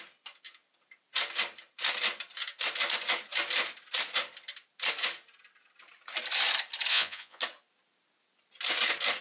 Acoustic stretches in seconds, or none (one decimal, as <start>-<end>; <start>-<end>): 0.0-6.9; 7.4-9.2